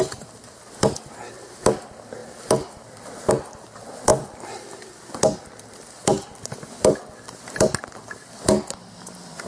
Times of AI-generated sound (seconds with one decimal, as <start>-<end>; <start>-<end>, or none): 2.2-3.3